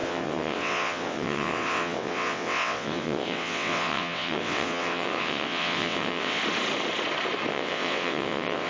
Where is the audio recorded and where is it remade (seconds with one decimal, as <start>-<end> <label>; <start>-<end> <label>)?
0.0-6.4 remade; 6.4-7.5 recorded; 7.5-8.7 remade